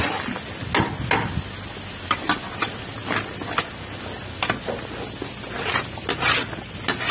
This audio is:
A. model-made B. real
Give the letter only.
B